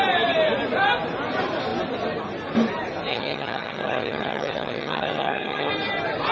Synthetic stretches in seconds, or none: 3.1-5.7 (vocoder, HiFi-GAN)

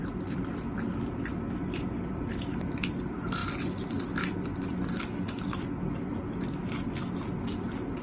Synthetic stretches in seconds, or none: none

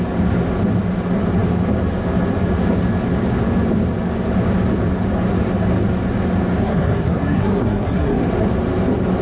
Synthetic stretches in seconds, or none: 6.6-8.3 (codec, SNAC)

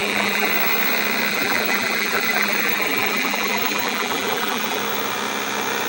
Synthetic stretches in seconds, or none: 0.0-0.5 (vocoder, BigVGAN v2); 1.3-4.8

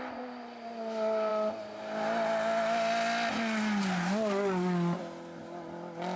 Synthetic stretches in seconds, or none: none

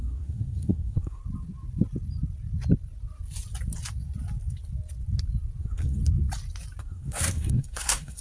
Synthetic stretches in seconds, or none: 0.0-1.2 (codec, SNAC); 5.6-6.0; 6.8-8.2

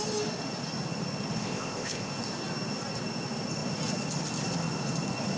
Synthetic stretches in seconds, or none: 1.4-2.1 (codec, ZipCodec)

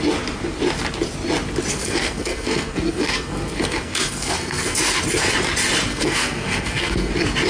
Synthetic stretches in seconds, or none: 1.7-5.0 (codec, SNAC); 5.9-7.1